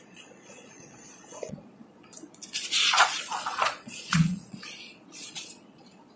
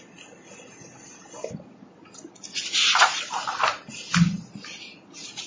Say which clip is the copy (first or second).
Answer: first